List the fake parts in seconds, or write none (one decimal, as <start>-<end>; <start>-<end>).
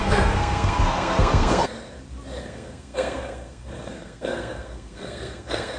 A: 0.0-1.7; 2.4-5.8